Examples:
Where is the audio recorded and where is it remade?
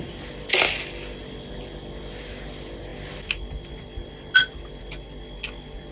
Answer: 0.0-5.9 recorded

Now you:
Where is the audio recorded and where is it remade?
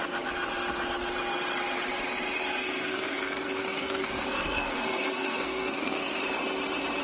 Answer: 0.0-2.6 recorded; 2.6-6.2 remade; 6.2-7.0 recorded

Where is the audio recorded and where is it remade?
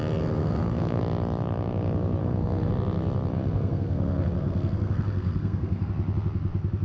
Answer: 0.0-0.4 recorded; 0.4-1.0 remade; 1.0-2.2 recorded; 2.2-2.7 remade; 2.7-3.3 recorded; 3.3-5.9 remade; 5.9-6.8 recorded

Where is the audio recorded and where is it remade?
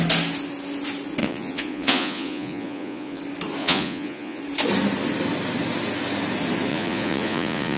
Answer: 0.0-1.2 recorded; 1.2-3.2 remade; 3.2-3.6 recorded; 3.6-4.4 remade; 4.4-6.7 recorded; 6.7-7.8 remade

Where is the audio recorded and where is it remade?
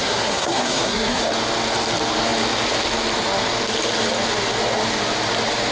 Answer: 0.0-1.2 remade; 1.2-5.7 recorded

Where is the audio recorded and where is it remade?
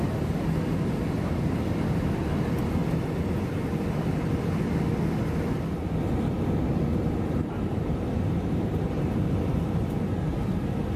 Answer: 0.0-6.9 recorded; 6.9-9.9 remade; 9.9-11.0 recorded